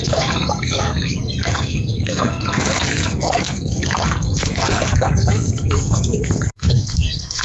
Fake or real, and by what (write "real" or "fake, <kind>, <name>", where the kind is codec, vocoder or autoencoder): fake, codec, SNAC